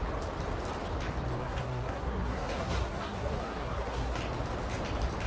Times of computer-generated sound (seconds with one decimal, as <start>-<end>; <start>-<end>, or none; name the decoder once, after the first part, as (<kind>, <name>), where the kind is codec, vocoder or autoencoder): 1.4-4.2 (codec, SNAC)